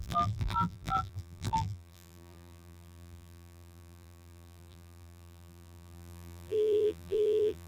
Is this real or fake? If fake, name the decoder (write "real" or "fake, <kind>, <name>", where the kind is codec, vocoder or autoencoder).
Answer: fake, vocoder, BigVGAN v2